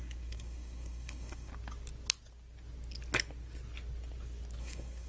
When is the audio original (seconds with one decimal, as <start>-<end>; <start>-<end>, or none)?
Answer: 1.5-4.6

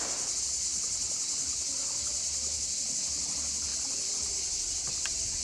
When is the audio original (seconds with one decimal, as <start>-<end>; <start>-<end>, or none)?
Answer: 0.0-5.4

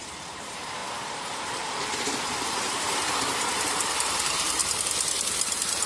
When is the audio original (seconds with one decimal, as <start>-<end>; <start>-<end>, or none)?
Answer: 4.6-5.9

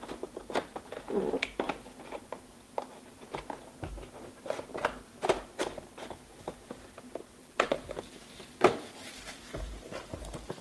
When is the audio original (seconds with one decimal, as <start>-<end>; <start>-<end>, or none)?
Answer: 0.0-7.4; 8.0-10.6

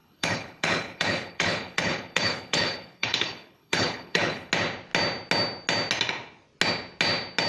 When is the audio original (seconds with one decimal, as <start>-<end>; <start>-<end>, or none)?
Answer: 4.5-7.5

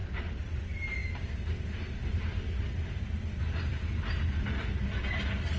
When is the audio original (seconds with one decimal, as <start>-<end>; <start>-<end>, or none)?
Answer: 0.0-5.6

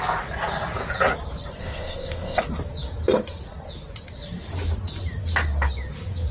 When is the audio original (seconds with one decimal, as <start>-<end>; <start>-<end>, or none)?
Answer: 0.0-1.6; 2.4-6.3